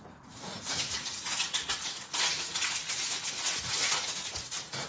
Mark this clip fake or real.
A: fake